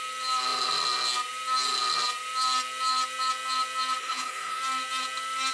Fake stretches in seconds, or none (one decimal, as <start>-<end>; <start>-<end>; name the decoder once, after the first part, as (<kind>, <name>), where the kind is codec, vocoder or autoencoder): 4.0-4.6 (codec, HILCodec)